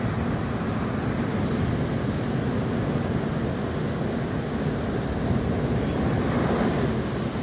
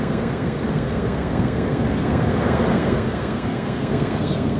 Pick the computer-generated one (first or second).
second